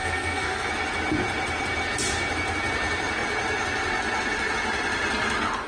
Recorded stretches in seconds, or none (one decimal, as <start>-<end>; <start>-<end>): 0.7-5.7